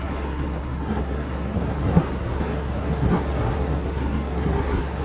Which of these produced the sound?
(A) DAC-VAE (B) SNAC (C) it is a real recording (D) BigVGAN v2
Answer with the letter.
B